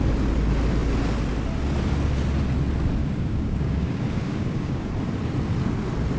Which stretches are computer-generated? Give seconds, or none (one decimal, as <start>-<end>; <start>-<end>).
3.0-4.9